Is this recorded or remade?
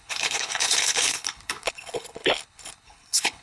remade